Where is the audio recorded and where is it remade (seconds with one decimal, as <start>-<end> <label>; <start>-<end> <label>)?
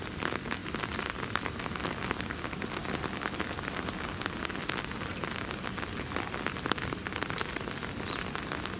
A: 0.0-8.8 recorded